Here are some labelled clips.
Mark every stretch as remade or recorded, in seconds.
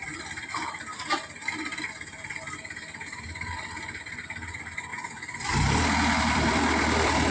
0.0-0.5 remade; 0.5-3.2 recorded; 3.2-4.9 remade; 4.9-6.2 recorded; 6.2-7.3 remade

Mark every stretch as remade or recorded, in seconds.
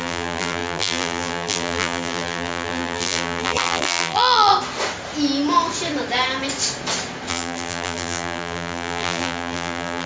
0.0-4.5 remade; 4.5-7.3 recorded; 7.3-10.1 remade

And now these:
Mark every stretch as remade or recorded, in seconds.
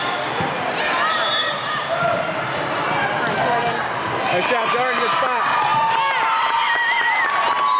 0.0-7.8 recorded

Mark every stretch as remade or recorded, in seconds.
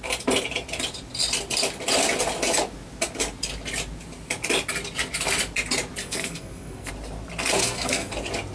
0.0-6.0 recorded; 6.0-6.9 remade; 6.9-7.6 recorded; 7.6-8.1 remade; 8.1-8.5 recorded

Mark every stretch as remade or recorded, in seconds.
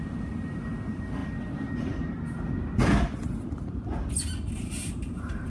0.0-1.2 remade; 1.2-4.5 recorded; 4.5-5.5 remade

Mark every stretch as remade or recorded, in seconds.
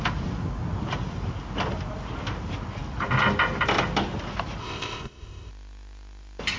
0.0-4.6 recorded; 4.6-5.5 remade; 5.5-6.6 recorded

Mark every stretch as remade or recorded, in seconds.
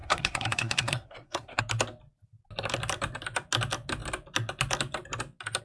0.0-1.6 remade; 1.6-5.6 recorded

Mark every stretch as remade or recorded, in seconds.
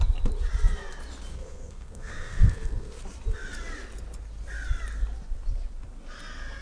0.0-1.3 recorded; 1.3-3.0 remade; 3.0-6.6 recorded